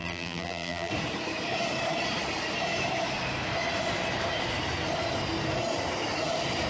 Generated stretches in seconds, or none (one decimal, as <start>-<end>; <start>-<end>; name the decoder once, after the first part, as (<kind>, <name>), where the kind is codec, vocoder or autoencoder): 0.0-0.9 (vocoder, BigVGAN v2)